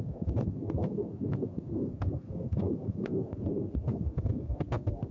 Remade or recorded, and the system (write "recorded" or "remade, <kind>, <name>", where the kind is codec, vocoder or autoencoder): remade, codec, SNAC